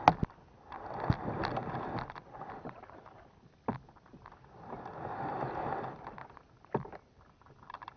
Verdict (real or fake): real